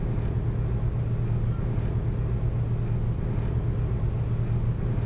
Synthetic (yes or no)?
no